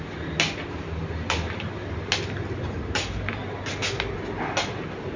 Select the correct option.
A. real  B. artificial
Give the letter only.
A